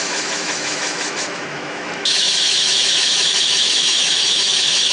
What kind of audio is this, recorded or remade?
remade